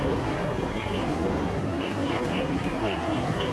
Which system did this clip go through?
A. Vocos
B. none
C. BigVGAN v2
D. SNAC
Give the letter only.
D